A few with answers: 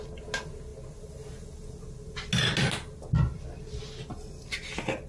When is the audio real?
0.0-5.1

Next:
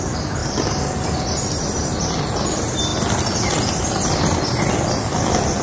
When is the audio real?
0.0-5.6

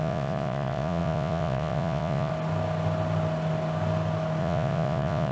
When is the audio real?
2.3-4.4

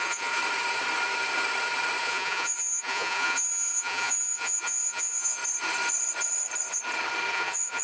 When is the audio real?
0.4-2.0; 5.4-7.3